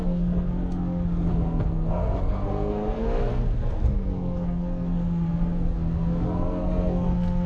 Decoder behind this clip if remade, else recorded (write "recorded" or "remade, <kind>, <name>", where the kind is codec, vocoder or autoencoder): remade, codec, SNAC